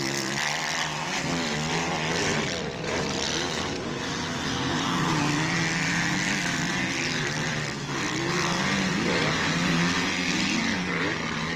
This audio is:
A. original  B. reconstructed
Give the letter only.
A